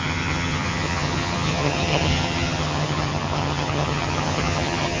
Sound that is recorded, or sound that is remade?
remade